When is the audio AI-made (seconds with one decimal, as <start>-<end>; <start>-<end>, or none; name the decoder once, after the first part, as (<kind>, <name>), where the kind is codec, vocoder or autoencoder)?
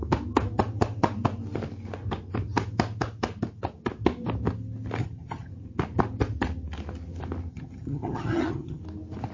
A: 5.0-5.5 (vocoder, HiFi-GAN); 7.5-8.8